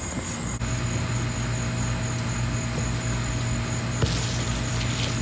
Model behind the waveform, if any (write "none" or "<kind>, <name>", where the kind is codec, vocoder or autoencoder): none